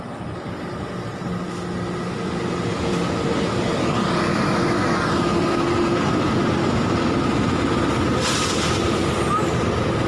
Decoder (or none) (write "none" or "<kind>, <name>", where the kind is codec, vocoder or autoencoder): none